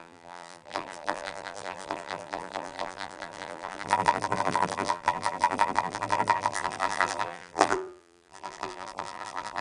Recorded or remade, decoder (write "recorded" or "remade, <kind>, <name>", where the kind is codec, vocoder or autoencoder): remade, vocoder, BigVGAN v2